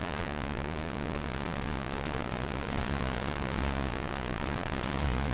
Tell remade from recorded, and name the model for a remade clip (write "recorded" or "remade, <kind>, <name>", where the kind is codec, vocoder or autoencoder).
remade, vocoder, Vocos